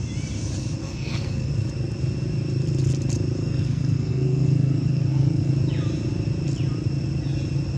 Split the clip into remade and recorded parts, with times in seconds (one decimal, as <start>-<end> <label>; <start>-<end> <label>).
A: 0.0-0.8 recorded; 0.8-1.5 remade; 1.5-3.4 recorded; 3.4-5.5 remade; 5.5-7.8 recorded